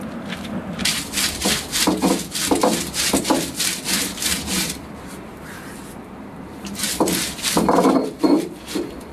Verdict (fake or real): fake